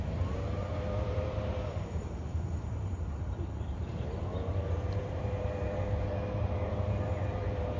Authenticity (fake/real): fake